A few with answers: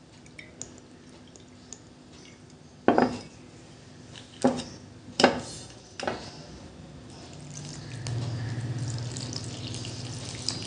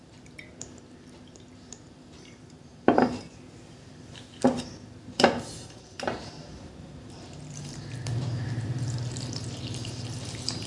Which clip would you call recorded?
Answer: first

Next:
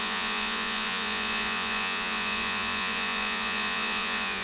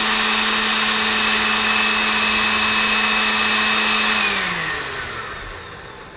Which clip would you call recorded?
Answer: second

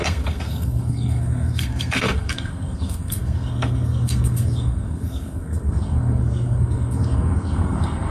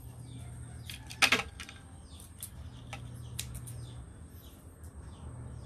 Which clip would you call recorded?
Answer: second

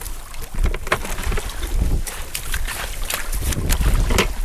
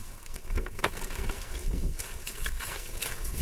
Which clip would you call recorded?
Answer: first